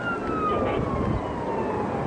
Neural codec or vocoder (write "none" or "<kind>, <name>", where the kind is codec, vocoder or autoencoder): none